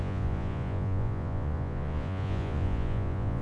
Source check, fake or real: fake